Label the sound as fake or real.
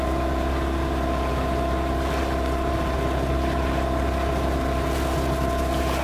real